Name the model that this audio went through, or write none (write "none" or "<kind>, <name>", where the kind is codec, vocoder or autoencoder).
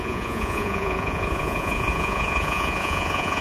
vocoder, Vocos